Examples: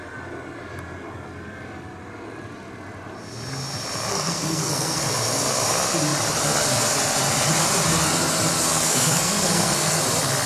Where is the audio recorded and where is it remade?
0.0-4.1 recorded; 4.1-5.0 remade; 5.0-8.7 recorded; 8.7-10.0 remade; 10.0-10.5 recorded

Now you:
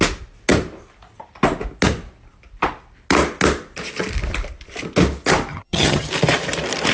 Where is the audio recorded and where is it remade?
0.0-5.5 recorded; 5.5-6.1 remade; 6.1-6.9 recorded

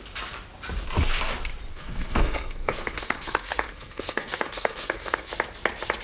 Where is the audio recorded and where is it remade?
0.0-1.7 recorded; 1.7-5.3 remade; 5.3-6.0 recorded